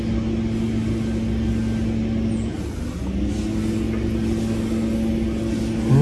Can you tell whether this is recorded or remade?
recorded